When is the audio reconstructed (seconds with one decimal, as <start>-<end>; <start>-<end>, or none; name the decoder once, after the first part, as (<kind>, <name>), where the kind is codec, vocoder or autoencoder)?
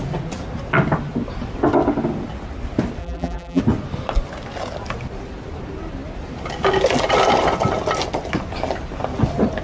3.0-3.6 (vocoder, BigVGAN v2)